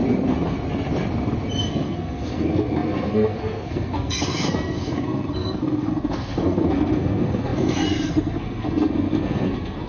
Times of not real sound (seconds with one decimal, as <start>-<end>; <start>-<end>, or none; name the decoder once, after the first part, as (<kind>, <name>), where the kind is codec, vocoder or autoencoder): 1.7-9.9 (codec, SNAC)